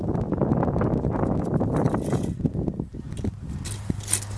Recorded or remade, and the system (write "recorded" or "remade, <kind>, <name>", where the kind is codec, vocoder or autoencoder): recorded